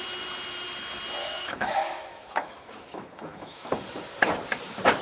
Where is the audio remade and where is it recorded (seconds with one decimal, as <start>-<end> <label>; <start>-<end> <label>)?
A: 0.0-1.2 recorded; 1.2-3.7 remade; 3.7-5.0 recorded